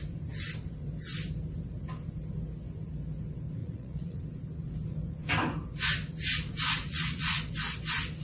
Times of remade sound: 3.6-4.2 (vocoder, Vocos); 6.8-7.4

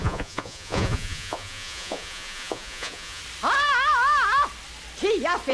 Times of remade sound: 0.0-3.2 (vocoder, Vocos)

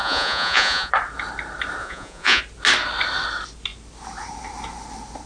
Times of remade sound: 0.0-0.9 (vocoder, Vocos); 1.8-2.4

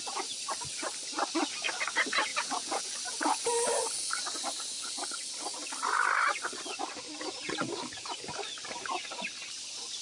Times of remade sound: 2.3-2.9 (vocoder, Vocos)

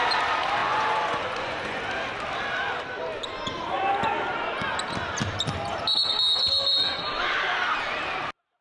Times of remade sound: 0.6-1.8 (vocoder, Vocos)

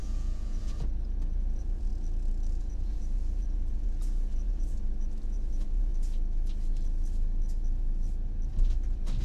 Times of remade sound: 0.0-1.9 (vocoder, Vocos); 2.6-5.9

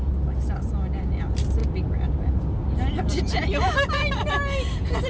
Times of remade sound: none

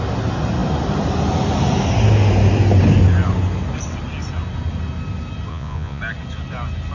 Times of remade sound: 5.5-6.0 (vocoder, Vocos)